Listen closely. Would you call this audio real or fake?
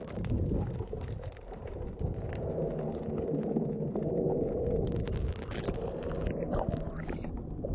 real